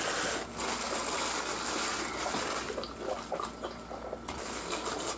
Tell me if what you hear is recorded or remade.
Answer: recorded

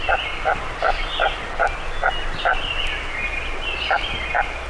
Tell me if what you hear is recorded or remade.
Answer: recorded